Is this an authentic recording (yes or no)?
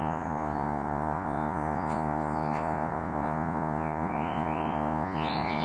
no